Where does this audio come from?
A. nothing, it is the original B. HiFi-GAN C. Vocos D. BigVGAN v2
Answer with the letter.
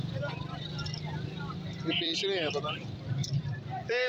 D